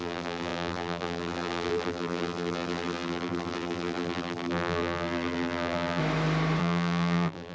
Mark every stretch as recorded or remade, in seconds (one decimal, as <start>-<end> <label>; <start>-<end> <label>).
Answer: 0.0-6.0 remade; 6.0-6.6 recorded; 6.6-7.5 remade